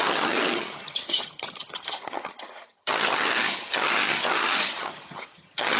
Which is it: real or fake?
fake